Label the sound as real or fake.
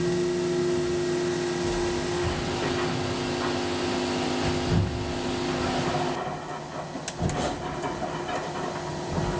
real